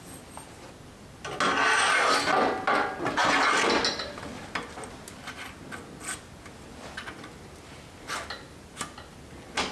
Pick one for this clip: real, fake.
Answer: real